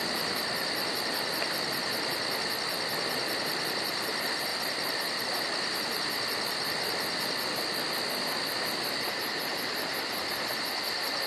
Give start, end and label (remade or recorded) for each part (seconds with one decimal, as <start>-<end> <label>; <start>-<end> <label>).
0.0-11.3 recorded